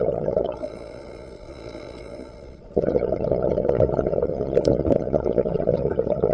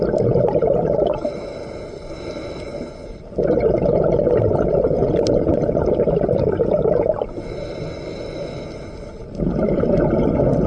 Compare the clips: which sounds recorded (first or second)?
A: second